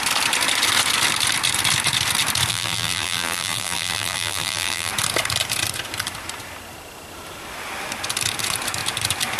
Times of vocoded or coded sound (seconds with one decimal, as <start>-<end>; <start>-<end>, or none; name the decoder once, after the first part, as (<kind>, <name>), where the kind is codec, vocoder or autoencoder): 2.5-4.9 (vocoder, BigVGAN v2)